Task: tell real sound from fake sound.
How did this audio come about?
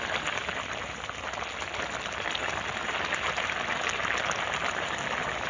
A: real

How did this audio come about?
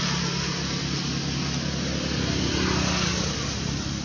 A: real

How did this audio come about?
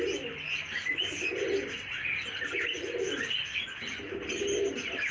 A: real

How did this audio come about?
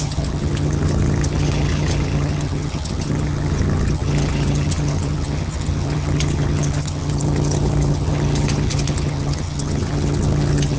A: fake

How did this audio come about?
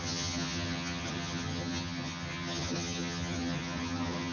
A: fake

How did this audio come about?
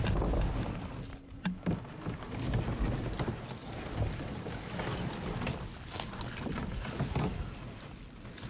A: real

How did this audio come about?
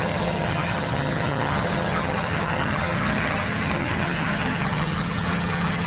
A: fake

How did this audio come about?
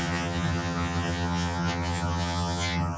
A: fake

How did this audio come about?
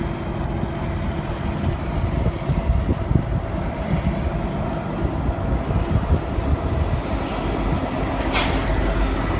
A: real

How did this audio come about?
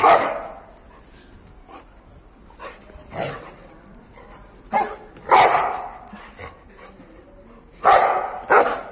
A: real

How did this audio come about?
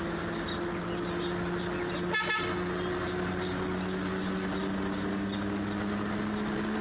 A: real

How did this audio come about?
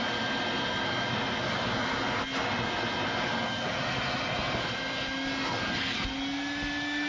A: real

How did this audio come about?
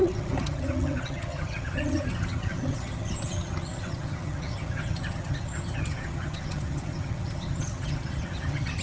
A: fake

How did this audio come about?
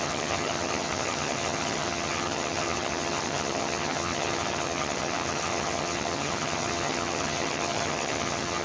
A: fake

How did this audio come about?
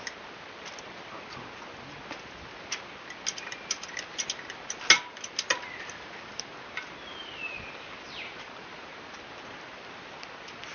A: real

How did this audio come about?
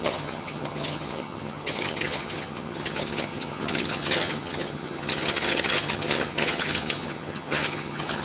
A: fake